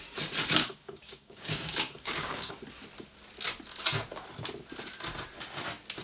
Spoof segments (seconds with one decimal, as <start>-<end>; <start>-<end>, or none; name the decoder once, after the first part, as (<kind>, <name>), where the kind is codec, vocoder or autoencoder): 0.6-2.5 (codec, DAC)